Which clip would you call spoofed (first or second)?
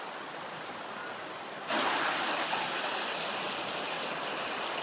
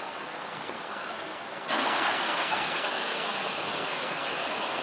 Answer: second